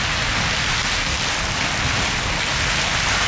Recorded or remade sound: recorded